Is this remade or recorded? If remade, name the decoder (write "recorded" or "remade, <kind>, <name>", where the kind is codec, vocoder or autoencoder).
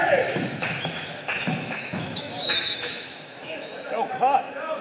remade, autoencoder, DAC-VAE